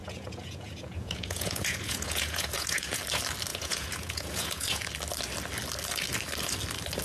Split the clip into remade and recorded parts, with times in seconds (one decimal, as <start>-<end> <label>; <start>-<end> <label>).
0.0-3.0 remade; 3.0-3.5 recorded; 3.5-4.8 remade; 4.8-7.0 recorded